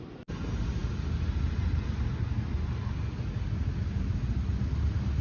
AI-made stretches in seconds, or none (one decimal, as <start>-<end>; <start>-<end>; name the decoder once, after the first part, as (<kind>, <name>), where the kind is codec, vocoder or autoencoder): none